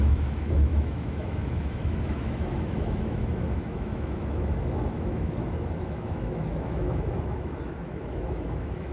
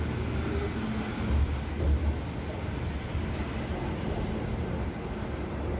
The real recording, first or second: second